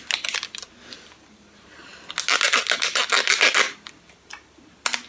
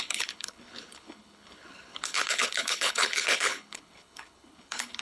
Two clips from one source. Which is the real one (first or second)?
first